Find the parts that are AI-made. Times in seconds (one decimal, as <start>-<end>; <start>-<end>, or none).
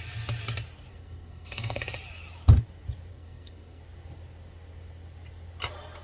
0.9-1.8; 3.1-3.8